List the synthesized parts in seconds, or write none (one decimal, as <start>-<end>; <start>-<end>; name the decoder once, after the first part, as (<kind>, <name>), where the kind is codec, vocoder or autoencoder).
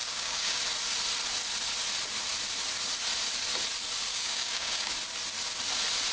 0.0-0.6 (codec, DAC); 4.1-4.9